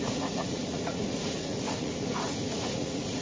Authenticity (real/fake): fake